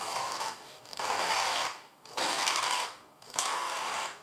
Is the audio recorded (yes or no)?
no